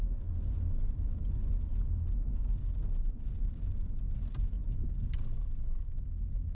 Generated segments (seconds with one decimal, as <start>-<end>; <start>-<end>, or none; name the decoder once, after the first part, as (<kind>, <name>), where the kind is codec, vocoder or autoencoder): none